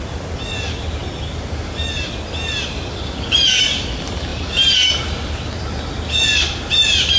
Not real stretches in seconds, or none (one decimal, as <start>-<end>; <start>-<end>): none